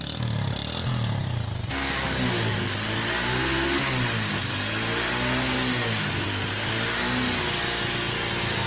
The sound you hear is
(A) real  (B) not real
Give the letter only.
A